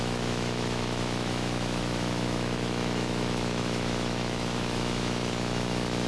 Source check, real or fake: fake